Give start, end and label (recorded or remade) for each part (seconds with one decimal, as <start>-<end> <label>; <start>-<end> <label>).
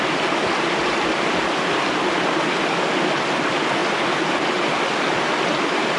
0.0-6.0 recorded